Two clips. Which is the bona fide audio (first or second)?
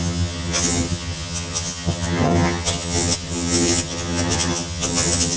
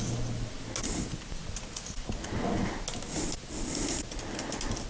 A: second